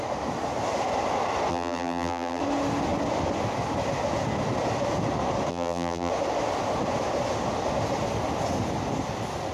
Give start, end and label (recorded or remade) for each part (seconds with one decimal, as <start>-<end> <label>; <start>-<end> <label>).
0.0-1.5 recorded; 1.5-2.4 remade; 2.4-5.5 recorded; 5.5-6.1 remade; 6.1-9.5 recorded